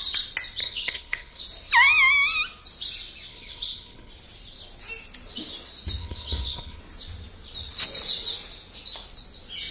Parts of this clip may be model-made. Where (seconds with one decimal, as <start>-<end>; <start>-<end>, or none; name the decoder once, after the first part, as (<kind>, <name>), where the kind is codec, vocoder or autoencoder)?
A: 0.6-1.4 (codec, HILCodec); 3.3-4.1; 6.0-6.8